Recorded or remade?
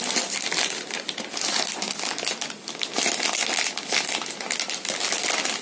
recorded